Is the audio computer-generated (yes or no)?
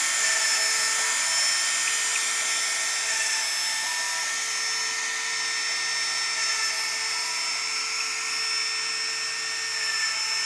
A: no